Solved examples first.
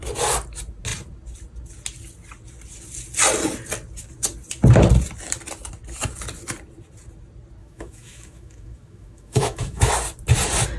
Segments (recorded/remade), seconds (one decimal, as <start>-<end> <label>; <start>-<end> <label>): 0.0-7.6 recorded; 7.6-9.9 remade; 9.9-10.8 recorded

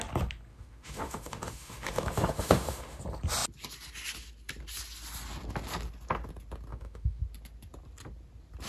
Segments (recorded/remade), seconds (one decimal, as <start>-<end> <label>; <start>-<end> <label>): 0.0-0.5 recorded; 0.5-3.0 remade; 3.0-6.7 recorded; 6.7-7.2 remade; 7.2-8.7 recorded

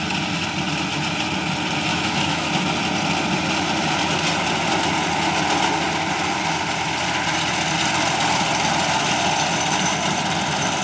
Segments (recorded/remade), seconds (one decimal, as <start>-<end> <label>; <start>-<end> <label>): 0.0-1.9 recorded; 1.9-2.5 remade; 2.5-10.8 recorded

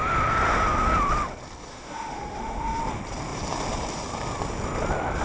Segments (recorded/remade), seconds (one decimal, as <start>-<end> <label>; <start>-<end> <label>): 0.0-1.7 recorded; 1.7-2.8 remade; 2.8-5.2 recorded